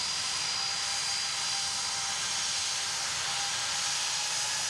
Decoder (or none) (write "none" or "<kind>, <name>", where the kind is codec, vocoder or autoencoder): none